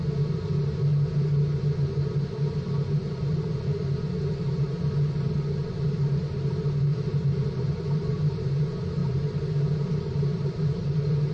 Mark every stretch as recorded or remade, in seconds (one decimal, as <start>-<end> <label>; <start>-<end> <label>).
0.0-6.9 recorded; 6.9-8.6 remade; 8.6-9.0 recorded; 9.0-11.3 remade